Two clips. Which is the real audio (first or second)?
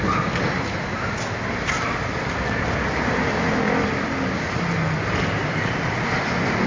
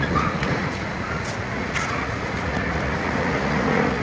first